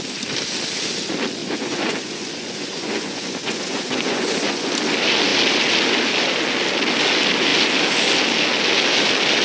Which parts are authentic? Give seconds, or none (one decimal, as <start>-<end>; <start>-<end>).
0.0-1.4; 4.7-9.4